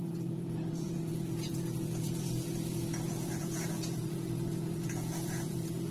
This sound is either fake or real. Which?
fake